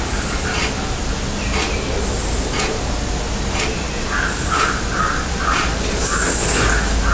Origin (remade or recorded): recorded